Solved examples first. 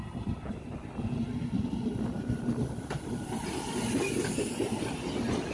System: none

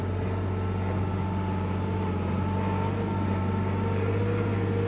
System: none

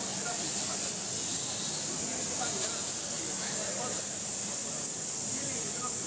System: none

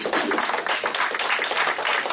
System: none